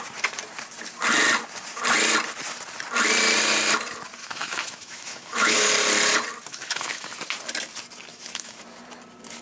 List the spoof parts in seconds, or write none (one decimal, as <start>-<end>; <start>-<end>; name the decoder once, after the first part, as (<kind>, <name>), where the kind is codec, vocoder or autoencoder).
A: 4.2-5.7 (autoencoder, DAC-VAE); 6.5-7.1; 8.1-8.6

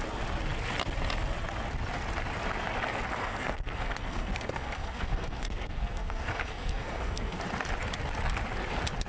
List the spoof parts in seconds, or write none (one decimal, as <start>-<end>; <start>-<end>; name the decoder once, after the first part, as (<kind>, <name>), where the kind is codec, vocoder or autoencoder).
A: 3.2-7.4 (codec, SNAC)

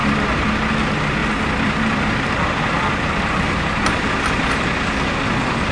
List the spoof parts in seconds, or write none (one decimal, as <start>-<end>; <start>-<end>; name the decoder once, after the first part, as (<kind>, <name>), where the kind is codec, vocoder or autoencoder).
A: 0.0-0.7 (vocoder, BigVGAN v2); 1.2-4.6

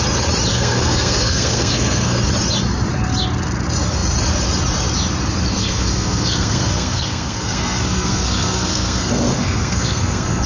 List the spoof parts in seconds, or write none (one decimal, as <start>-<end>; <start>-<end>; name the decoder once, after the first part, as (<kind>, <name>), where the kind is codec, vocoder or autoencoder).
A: 0.5-2.2 (codec, SNAC); 5.5-10.5